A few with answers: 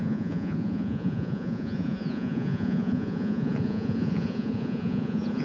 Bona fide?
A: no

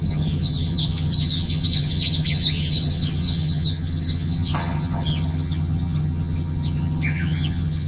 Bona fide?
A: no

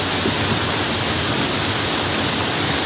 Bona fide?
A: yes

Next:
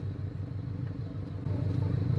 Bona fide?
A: yes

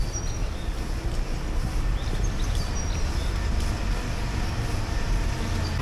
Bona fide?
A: yes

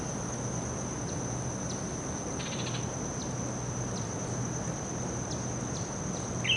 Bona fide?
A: yes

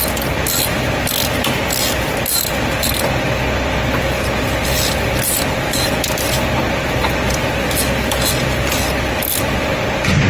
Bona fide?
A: yes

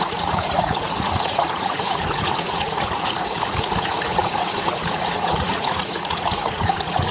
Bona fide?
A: no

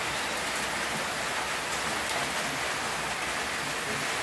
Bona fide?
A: yes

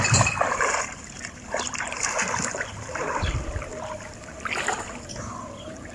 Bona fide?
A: yes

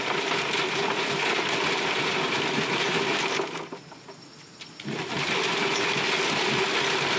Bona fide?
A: yes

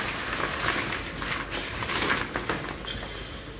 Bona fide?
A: yes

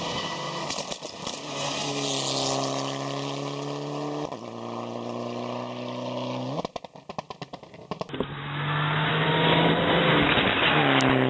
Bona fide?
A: yes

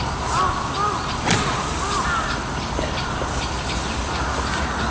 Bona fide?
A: yes